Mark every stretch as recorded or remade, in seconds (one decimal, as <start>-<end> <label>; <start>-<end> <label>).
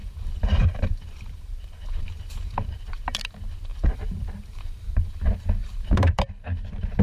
0.0-2.7 remade; 2.7-3.7 recorded; 3.7-5.1 remade; 5.1-5.6 recorded; 5.6-6.3 remade; 6.3-7.0 recorded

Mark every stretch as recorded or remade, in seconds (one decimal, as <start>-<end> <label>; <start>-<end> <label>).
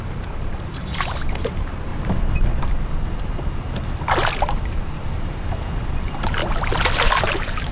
0.0-1.9 remade; 1.9-4.6 recorded; 4.6-6.4 remade; 6.4-7.3 recorded; 7.3-7.7 remade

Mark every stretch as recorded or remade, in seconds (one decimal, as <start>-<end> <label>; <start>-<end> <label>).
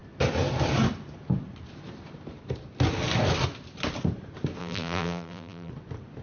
0.0-4.6 recorded; 4.6-5.7 remade; 5.7-6.2 recorded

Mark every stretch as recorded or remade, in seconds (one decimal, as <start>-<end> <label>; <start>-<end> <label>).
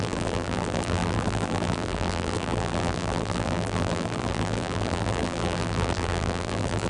0.0-6.9 remade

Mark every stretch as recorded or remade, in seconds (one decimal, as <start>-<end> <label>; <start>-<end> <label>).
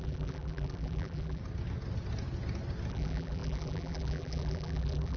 0.0-1.4 remade; 1.4-2.9 recorded; 2.9-5.2 remade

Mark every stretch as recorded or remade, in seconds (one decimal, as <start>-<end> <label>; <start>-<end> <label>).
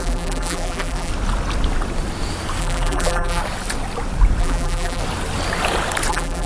0.0-1.1 remade; 1.1-2.6 recorded; 2.6-3.4 remade; 3.4-4.4 recorded; 4.4-5.0 remade; 5.0-6.1 recorded; 6.1-6.5 remade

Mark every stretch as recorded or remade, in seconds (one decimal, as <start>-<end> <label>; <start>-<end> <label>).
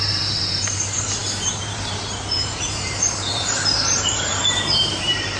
0.0-5.4 remade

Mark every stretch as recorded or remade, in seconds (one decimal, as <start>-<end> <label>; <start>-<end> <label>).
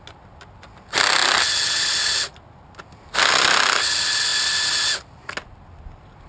0.0-6.3 recorded